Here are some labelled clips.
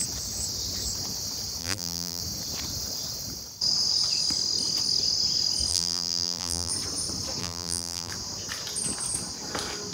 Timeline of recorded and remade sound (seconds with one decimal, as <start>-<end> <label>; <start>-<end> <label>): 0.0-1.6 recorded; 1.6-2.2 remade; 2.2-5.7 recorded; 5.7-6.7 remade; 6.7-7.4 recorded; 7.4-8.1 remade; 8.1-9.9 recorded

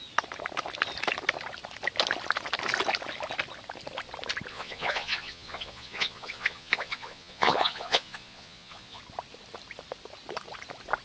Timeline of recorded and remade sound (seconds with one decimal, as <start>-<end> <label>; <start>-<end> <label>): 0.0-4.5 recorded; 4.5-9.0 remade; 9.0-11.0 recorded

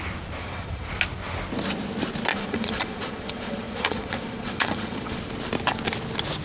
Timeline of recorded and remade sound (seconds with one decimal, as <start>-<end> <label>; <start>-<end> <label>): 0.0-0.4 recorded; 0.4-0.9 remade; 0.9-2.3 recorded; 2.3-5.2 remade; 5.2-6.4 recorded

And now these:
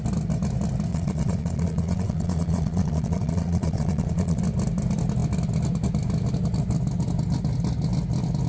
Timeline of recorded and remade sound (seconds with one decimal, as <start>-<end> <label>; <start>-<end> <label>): 0.0-0.9 recorded; 0.9-4.4 remade; 4.4-8.5 recorded

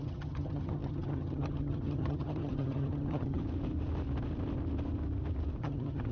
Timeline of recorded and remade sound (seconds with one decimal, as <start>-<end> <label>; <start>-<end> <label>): 0.0-3.4 remade; 3.4-5.6 recorded; 5.6-6.1 remade

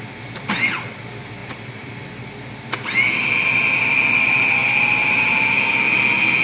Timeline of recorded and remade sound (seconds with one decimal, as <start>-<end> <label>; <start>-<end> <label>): 0.0-1.4 recorded; 1.4-2.0 remade; 2.0-6.4 recorded

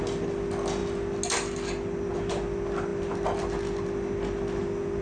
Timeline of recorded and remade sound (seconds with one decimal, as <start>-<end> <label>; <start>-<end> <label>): 0.0-5.0 recorded

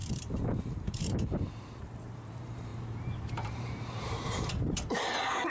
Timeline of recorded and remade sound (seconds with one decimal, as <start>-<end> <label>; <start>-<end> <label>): 0.0-5.5 remade